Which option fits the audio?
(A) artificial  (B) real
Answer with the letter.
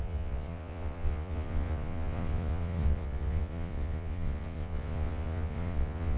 A